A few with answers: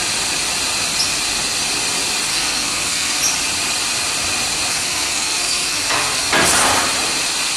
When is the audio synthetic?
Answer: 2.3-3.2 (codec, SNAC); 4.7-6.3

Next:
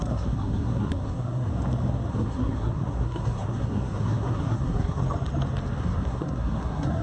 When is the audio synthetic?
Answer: 0.0-1.5 (codec, SNAC); 2.1-5.0; 5.8-7.0

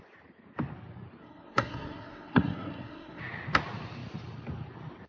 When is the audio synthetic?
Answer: 1.2-3.2 (codec, SNAC)

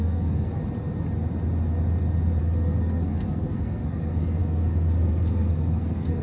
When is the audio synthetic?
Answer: 0.0-0.6 (codec, SNAC); 2.4-6.2